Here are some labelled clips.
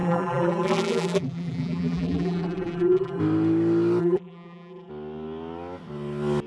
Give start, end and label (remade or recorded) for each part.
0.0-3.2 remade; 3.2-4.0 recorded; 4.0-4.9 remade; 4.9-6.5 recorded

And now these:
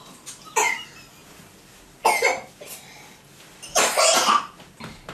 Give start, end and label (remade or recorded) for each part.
0.0-5.1 recorded

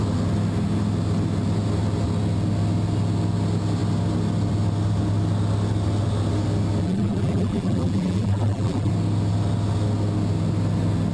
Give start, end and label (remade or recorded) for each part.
0.0-6.8 recorded; 6.8-8.9 remade; 8.9-11.1 recorded

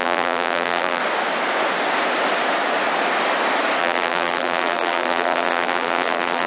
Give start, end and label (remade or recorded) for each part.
0.0-1.0 remade; 1.0-3.8 recorded; 3.8-6.5 remade

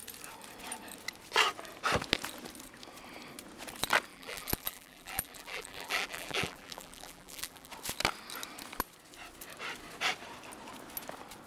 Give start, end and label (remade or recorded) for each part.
0.0-4.1 recorded; 4.1-7.7 remade; 7.7-11.5 recorded